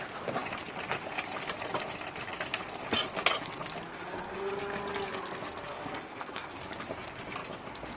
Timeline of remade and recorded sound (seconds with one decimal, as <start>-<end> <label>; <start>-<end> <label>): 0.0-3.9 recorded; 3.9-4.5 remade; 4.5-5.7 recorded; 5.7-6.6 remade; 6.6-8.0 recorded